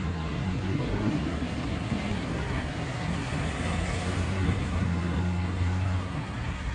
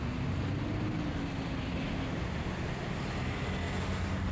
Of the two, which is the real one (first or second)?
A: second